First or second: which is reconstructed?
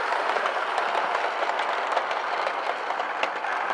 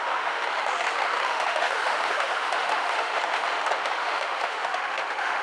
second